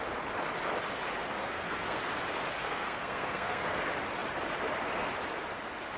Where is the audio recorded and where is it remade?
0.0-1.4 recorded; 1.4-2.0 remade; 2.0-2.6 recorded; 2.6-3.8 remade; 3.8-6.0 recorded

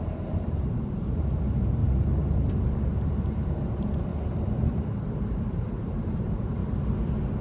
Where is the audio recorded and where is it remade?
0.0-1.8 remade; 1.8-3.1 recorded; 3.1-4.1 remade; 4.1-4.6 recorded; 4.6-6.6 remade; 6.6-7.4 recorded